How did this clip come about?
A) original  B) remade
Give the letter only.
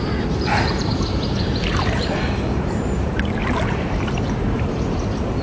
B